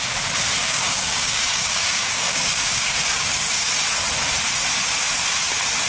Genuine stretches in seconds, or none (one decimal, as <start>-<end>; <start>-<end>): 0.0-0.6; 3.7-5.9